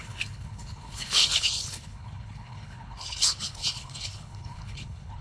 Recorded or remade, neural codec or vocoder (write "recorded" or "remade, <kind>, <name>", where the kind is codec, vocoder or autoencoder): remade, codec, HILCodec